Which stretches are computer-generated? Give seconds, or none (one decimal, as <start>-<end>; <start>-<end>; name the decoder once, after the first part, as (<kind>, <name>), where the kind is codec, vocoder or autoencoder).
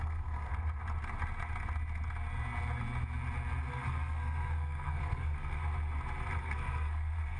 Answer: 0.0-0.5 (codec, SNAC); 3.7-5.6; 6.4-7.4